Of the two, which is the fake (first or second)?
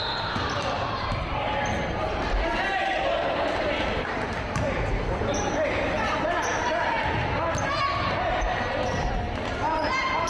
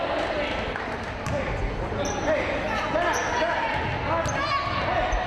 first